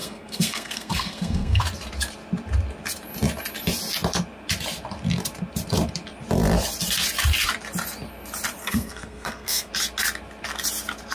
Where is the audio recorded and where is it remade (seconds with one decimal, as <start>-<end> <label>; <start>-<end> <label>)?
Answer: 0.0-1.6 remade; 1.6-8.6 recorded; 8.6-9.7 remade; 9.7-11.1 recorded